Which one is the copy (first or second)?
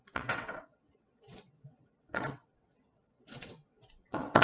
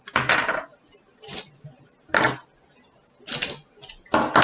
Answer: first